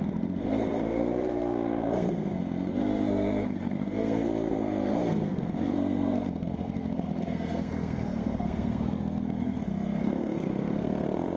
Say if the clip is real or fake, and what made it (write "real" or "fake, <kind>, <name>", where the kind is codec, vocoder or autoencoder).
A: fake, codec, SNAC